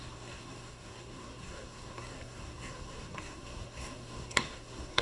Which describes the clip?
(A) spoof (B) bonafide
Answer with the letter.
A